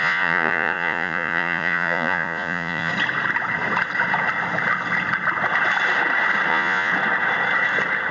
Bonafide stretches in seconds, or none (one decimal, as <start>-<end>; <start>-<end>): 2.9-6.5; 6.9-8.1

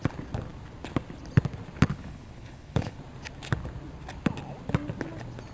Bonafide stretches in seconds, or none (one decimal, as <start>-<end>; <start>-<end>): 0.0-1.9; 3.0-5.5

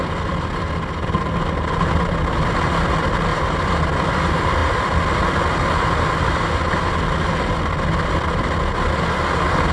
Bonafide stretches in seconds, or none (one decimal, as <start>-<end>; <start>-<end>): 0.0-3.3; 3.9-9.7

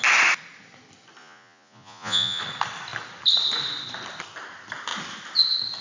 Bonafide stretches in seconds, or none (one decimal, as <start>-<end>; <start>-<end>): 0.0-1.2; 2.4-5.8

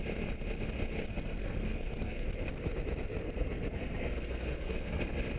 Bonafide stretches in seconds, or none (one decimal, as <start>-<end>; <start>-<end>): 0.0-1.1; 2.3-3.2; 5.0-5.4

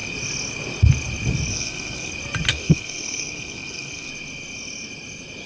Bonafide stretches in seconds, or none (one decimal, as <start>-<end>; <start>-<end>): 0.0-1.5; 2.1-2.5; 4.1-5.5

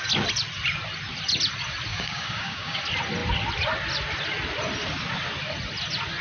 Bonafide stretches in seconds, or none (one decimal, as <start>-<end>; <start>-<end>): 0.0-1.9; 2.8-6.2

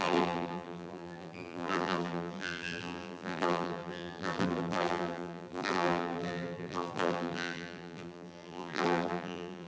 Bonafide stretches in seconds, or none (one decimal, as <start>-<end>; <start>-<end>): none